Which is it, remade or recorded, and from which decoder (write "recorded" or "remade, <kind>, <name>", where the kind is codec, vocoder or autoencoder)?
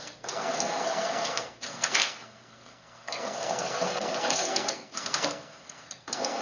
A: remade, codec, SNAC